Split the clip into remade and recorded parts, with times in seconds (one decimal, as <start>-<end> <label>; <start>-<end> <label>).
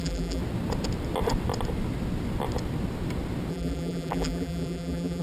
0.0-0.4 remade; 0.4-3.5 recorded; 3.5-5.2 remade